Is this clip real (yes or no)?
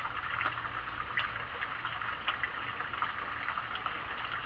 yes